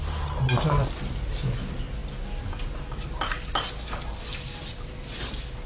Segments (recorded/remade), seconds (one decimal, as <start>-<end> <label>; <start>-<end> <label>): 0.0-5.7 recorded